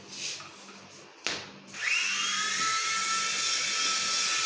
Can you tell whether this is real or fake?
real